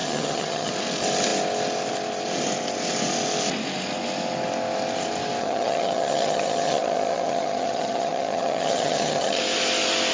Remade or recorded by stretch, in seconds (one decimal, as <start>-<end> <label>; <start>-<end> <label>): 0.0-0.7 remade; 0.7-5.4 recorded; 5.4-9.4 remade; 9.4-10.1 recorded